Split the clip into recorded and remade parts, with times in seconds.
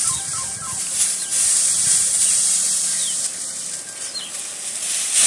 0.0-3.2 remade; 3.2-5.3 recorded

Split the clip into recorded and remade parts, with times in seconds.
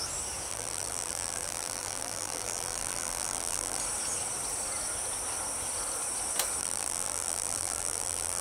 0.0-0.5 recorded; 0.5-3.8 remade; 3.8-6.6 recorded; 6.6-8.4 remade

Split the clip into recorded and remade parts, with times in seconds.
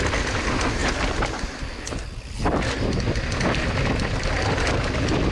0.0-5.3 recorded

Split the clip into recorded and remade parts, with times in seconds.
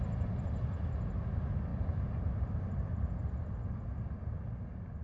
0.0-1.7 recorded; 1.7-3.1 remade; 3.1-5.0 recorded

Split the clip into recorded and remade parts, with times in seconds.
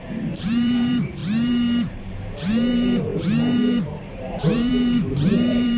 0.0-5.8 remade